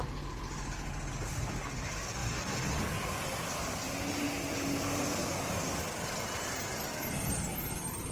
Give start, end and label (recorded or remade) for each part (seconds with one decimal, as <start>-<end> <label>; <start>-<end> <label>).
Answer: 0.0-8.1 recorded

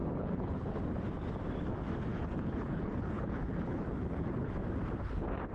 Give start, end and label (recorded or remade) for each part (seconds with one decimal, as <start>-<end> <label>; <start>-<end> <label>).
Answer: 0.0-0.8 remade; 0.8-2.1 recorded; 2.1-4.5 remade; 4.5-5.5 recorded

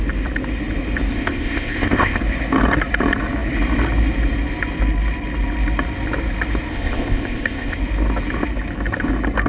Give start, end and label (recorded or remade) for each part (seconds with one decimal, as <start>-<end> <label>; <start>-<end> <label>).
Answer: 0.0-1.1 recorded; 1.1-2.2 remade; 2.2-6.7 recorded; 6.7-7.8 remade; 7.8-9.5 recorded

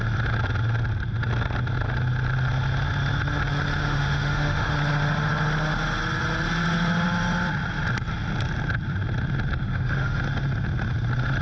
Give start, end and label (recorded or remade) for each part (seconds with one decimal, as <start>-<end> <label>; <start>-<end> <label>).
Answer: 0.0-3.8 recorded; 3.8-4.7 remade; 4.7-9.6 recorded; 9.6-10.2 remade; 10.2-11.4 recorded

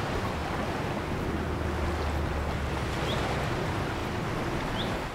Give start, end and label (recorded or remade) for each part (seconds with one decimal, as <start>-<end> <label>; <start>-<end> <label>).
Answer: 0.0-0.4 remade; 0.4-3.5 recorded; 3.5-4.0 remade; 4.0-5.1 recorded

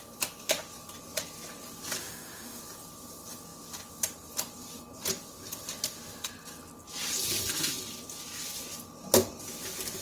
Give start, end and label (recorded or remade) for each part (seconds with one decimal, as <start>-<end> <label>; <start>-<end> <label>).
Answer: 0.0-2.0 recorded; 2.0-2.6 remade; 2.6-10.0 recorded

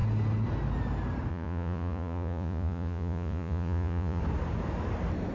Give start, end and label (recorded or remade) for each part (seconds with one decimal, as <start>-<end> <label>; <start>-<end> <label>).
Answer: 0.0-1.3 recorded; 1.3-4.2 remade; 4.2-5.3 recorded

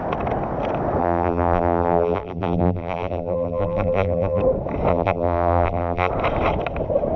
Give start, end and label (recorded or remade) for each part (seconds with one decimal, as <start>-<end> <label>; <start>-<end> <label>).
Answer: 0.0-1.0 recorded; 1.0-4.4 remade; 4.4-4.9 recorded; 4.9-6.1 remade; 6.1-7.2 recorded